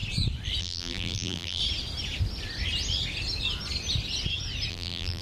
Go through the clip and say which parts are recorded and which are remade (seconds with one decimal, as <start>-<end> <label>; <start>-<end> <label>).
0.0-0.6 recorded; 0.6-1.6 remade; 1.6-4.7 recorded; 4.7-5.2 remade